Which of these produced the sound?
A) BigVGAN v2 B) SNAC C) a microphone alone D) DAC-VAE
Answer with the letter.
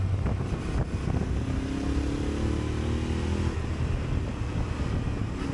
C